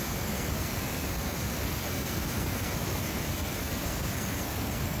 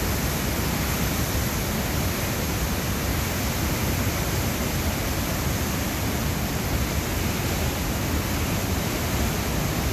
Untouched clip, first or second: second